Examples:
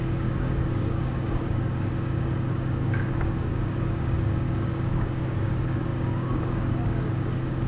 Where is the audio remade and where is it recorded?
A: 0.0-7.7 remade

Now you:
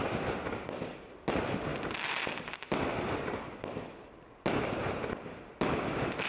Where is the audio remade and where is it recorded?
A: 0.0-6.3 recorded

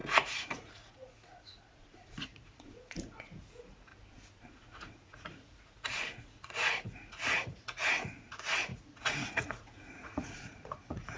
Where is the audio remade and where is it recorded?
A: 0.0-3.9 remade; 3.9-4.5 recorded; 4.5-11.2 remade

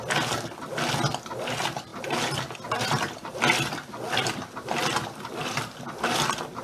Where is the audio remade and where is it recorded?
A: 0.0-6.6 recorded